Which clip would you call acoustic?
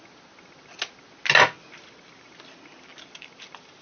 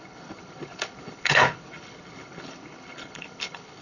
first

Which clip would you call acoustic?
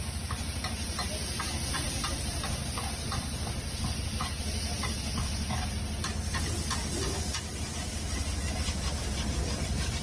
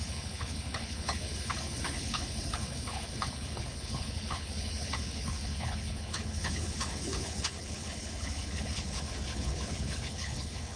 first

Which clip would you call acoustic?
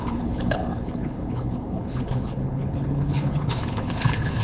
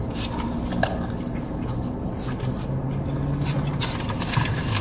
second